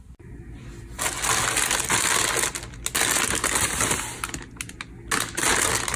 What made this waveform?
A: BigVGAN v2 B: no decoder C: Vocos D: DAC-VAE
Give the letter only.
B